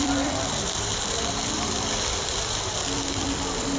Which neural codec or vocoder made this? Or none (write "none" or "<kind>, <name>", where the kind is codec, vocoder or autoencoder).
vocoder, BigVGAN v2